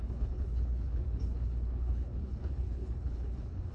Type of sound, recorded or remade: remade